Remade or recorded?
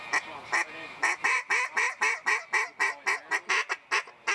recorded